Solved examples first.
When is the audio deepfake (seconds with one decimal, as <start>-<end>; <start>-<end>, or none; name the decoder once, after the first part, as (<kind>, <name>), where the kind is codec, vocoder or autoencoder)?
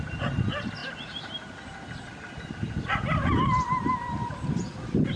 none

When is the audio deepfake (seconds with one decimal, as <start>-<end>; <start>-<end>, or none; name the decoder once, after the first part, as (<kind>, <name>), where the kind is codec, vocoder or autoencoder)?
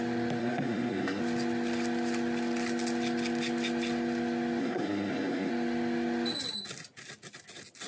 0.4-1.2 (codec, SNAC); 4.6-5.5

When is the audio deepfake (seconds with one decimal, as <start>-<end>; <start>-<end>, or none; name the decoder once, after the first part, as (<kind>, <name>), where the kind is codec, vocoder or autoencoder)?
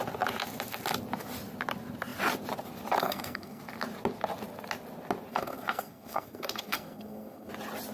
3.0-3.6 (codec, SNAC); 5.3-7.5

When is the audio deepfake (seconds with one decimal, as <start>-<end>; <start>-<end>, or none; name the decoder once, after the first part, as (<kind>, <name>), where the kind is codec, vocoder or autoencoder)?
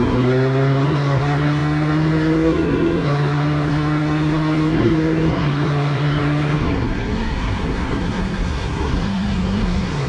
0.0-10.1 (codec, SNAC)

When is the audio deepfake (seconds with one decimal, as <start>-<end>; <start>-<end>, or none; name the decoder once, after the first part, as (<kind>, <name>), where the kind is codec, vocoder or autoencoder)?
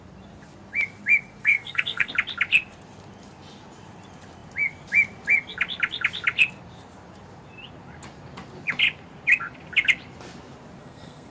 1.4-2.1 (codec, SNAC); 10.8-11.3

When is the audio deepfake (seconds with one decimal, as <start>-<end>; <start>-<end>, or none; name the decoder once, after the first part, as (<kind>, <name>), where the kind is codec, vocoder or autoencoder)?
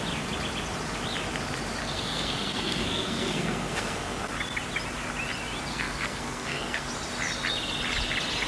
1.8-4.3 (codec, SNAC); 5.7-6.9